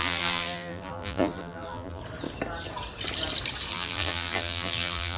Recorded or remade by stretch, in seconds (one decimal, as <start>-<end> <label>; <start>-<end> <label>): 0.0-2.0 remade; 2.0-3.7 recorded; 3.7-5.2 remade